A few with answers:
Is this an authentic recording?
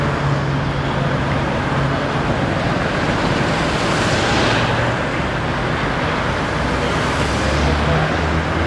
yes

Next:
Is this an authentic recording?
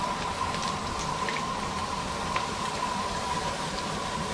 no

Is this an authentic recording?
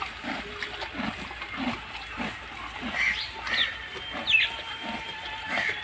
yes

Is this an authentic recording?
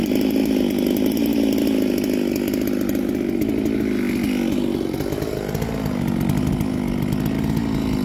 yes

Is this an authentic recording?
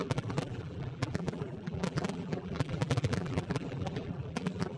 no